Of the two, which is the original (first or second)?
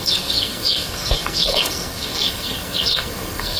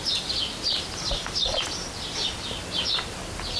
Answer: second